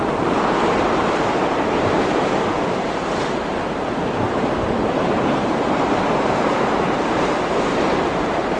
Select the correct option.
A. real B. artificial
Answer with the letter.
B